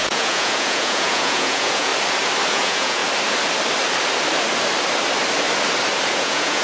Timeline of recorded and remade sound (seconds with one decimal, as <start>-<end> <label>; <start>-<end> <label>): 0.0-1.9 remade; 1.9-2.5 recorded; 2.5-3.0 remade; 3.0-6.1 recorded; 6.1-6.6 remade